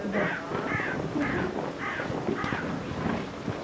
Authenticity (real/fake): real